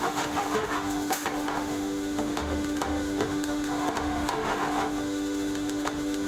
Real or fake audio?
fake